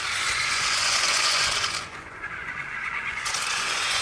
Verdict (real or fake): fake